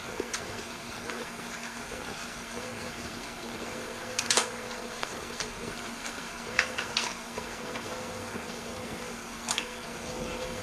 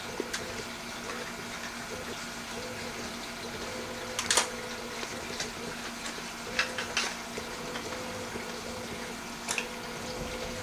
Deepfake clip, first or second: first